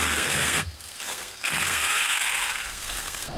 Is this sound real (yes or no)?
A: no